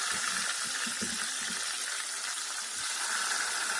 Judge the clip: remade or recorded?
recorded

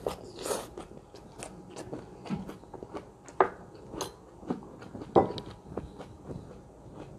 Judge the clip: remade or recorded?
recorded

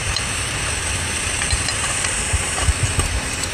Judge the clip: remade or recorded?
remade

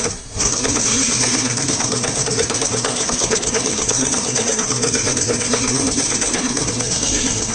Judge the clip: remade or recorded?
remade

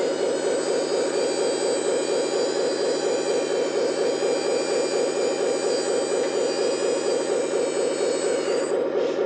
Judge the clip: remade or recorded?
recorded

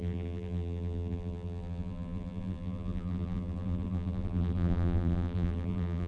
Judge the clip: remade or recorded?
remade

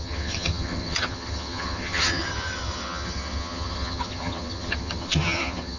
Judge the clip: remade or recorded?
remade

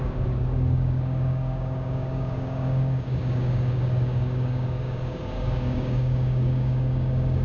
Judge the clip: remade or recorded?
remade